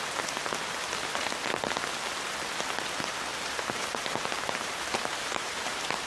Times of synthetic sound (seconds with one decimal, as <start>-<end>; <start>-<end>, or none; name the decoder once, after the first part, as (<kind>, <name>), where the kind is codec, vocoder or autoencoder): 3.3-6.1 (vocoder, BigVGAN v2)